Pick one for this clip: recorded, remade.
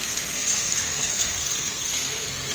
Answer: remade